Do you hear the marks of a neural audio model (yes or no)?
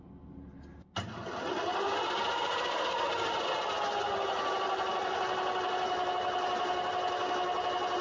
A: no